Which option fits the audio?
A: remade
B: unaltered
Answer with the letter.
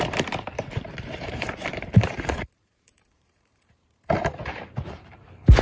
A